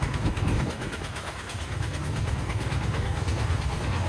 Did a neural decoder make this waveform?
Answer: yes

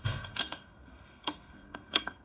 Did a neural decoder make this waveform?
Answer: yes